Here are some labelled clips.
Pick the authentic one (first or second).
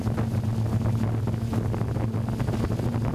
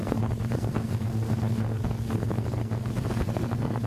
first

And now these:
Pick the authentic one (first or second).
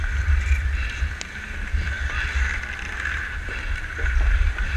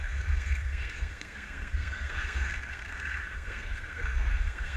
first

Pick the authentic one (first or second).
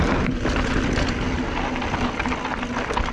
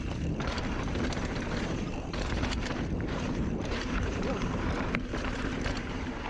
first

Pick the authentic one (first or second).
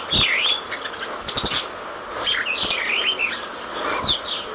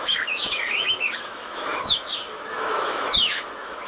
first